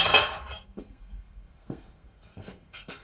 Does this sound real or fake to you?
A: fake